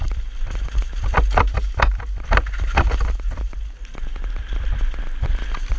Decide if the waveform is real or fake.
real